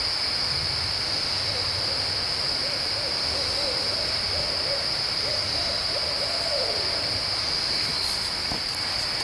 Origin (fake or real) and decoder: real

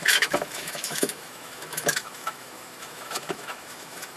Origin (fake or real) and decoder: fake, autoencoder, DAC-VAE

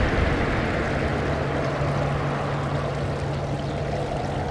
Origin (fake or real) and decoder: real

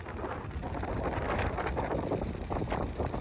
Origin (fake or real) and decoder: real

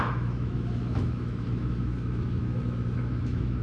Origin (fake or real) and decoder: fake, autoencoder, DAC-VAE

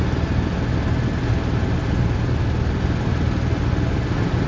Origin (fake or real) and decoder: real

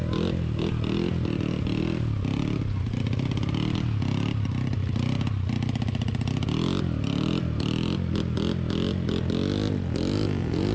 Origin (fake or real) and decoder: real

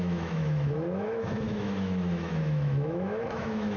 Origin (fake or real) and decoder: fake, autoencoder, DAC-VAE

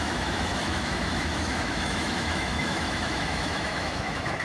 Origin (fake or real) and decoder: fake, autoencoder, DAC-VAE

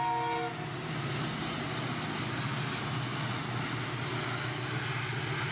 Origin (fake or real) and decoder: real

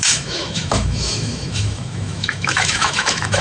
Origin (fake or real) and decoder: fake, autoencoder, DAC-VAE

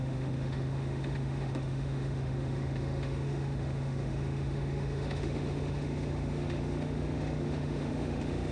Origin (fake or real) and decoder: fake, autoencoder, DAC-VAE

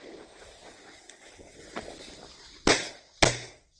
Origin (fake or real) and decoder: real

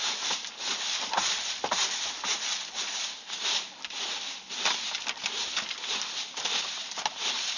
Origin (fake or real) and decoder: real